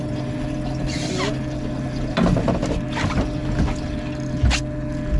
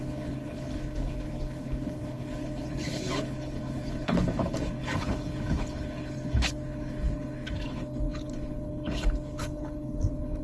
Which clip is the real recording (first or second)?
first